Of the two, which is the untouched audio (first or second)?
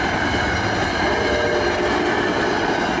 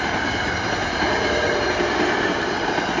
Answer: first